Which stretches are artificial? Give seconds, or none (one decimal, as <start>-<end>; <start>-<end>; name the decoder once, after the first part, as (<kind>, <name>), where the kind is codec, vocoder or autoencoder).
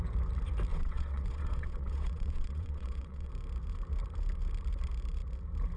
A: 0.7-3.3 (vocoder, WaveNeXt)